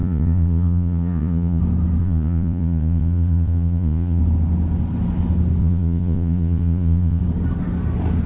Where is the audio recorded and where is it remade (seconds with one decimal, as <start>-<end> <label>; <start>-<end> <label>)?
0.0-1.6 remade; 1.6-2.0 recorded; 2.0-4.2 remade; 4.2-5.6 recorded; 5.6-7.2 remade; 7.2-8.3 recorded